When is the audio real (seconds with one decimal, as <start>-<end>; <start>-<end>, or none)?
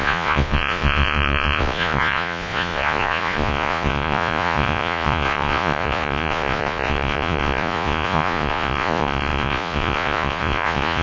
none